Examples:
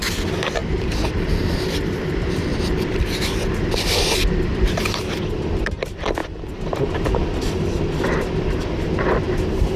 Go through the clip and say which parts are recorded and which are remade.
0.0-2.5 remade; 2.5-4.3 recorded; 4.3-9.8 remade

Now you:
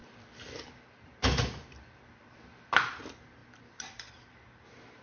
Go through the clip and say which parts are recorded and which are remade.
0.0-3.0 remade; 3.0-3.4 recorded; 3.4-4.1 remade; 4.1-5.0 recorded

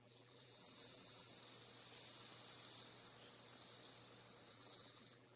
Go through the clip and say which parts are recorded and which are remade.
0.0-1.3 remade; 1.3-4.5 recorded; 4.5-5.4 remade

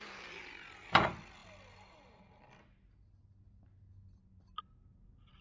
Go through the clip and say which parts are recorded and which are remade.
0.0-5.4 recorded

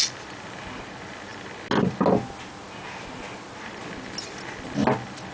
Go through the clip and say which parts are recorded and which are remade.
0.0-5.3 recorded

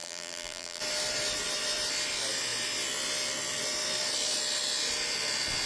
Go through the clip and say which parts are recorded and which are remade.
0.0-0.8 remade; 0.8-5.7 recorded

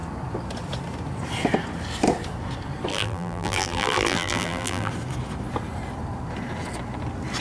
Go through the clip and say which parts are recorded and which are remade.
0.0-2.9 recorded; 2.9-4.9 remade; 4.9-7.4 recorded

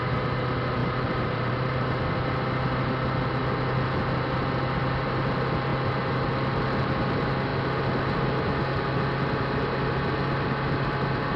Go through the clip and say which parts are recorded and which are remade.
0.0-0.8 recorded; 0.8-2.0 remade; 2.0-11.4 recorded